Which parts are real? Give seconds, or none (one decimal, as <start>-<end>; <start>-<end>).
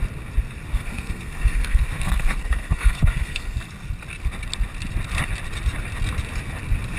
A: 0.0-0.7; 3.7-7.0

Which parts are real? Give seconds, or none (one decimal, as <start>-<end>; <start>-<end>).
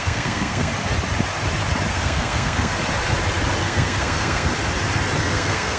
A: 0.7-1.9; 2.7-3.6; 4.5-5.2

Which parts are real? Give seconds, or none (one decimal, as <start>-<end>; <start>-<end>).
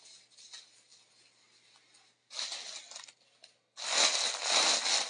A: 0.0-5.1